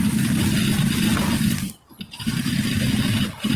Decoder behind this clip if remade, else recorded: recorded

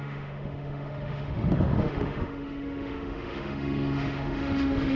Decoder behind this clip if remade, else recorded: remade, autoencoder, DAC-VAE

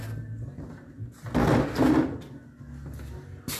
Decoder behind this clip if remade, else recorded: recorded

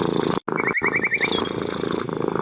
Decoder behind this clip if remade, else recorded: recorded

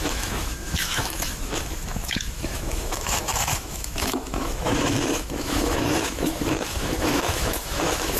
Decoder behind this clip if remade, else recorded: remade, autoencoder, DAC-VAE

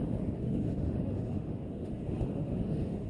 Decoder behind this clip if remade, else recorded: remade, autoencoder, DAC-VAE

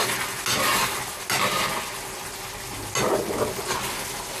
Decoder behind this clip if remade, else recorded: recorded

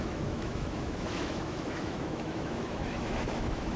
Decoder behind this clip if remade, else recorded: remade, autoencoder, DAC-VAE